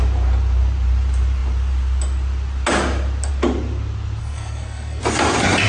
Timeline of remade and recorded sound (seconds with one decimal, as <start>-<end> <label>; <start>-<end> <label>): 0.0-4.2 recorded; 4.2-5.0 remade; 5.0-5.7 recorded